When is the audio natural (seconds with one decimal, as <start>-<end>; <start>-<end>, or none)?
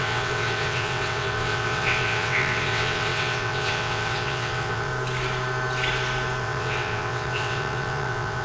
4.9-6.4